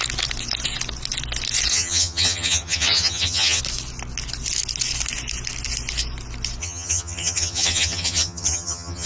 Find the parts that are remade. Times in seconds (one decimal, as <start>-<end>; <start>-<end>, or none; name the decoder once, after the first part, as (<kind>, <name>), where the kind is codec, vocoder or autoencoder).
1.7-3.6 (vocoder, HiFi-GAN); 6.6-9.1